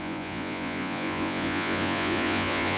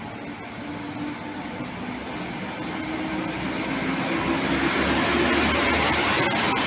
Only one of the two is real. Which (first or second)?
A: second